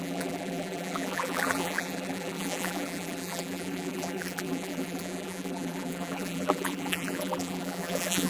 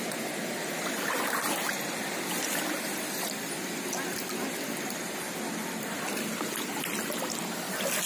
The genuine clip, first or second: second